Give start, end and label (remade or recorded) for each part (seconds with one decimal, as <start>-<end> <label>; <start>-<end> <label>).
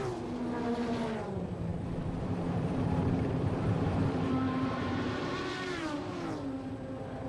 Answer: 0.0-1.7 recorded; 1.7-6.1 remade; 6.1-7.3 recorded